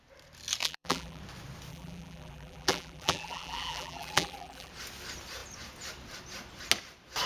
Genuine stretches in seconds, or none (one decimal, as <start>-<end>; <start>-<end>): 0.0-0.6; 1.2-1.7; 4.7-7.3